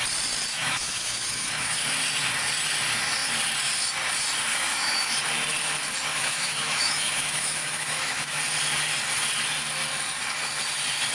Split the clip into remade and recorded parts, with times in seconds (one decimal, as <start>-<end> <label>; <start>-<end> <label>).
0.0-0.5 recorded; 0.5-1.8 remade; 1.8-4.5 recorded; 4.5-5.1 remade; 5.1-6.1 recorded; 6.1-8.4 remade; 8.4-11.1 recorded